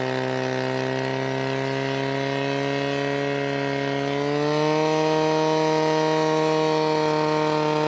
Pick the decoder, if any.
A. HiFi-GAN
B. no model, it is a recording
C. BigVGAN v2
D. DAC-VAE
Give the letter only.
B